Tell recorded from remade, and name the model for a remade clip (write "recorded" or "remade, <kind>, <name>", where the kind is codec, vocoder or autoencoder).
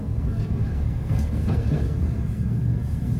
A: remade, codec, SNAC